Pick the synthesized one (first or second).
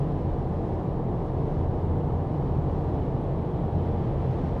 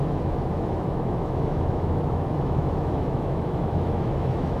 second